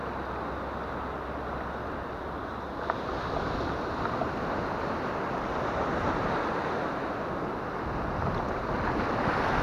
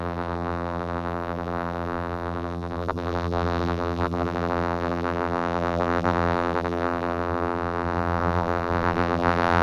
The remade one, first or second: second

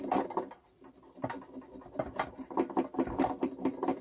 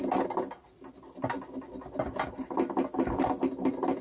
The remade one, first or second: first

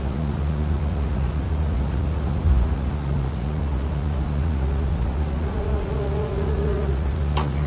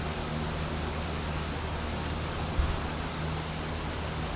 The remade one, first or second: first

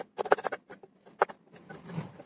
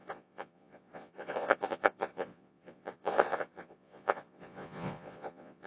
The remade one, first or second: second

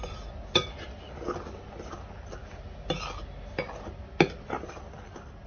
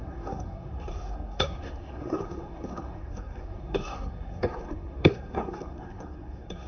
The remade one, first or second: second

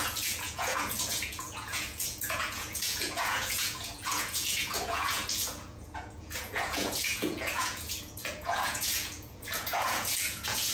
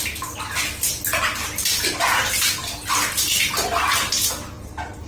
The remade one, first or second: first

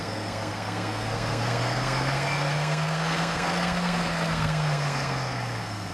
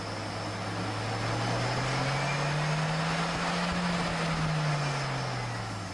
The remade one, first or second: first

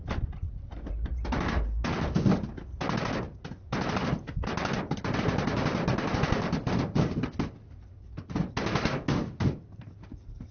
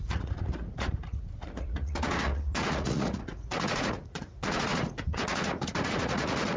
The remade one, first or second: second